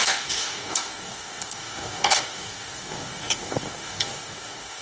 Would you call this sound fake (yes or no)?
yes